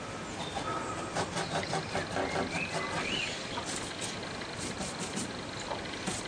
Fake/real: real